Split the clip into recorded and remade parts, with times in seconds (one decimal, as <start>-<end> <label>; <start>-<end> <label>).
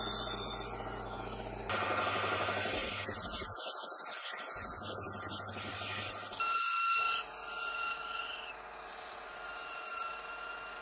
0.0-10.8 recorded